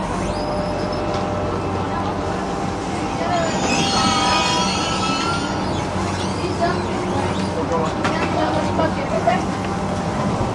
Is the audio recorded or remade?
recorded